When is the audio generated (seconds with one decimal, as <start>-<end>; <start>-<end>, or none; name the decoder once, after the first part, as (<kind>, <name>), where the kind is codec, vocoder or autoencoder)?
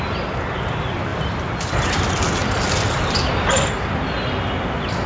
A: 1.1-2.0 (vocoder, BigVGAN v2); 2.4-4.3